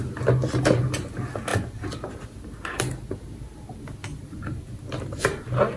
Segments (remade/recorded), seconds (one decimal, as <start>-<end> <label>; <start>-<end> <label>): 0.0-5.8 recorded